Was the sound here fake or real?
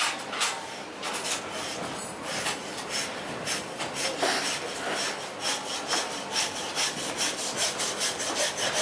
real